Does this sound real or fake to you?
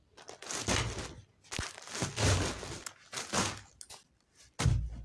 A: real